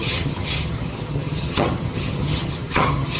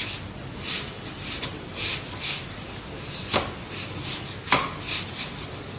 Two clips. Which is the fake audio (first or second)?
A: first